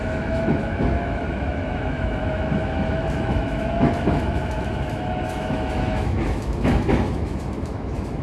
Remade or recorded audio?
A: remade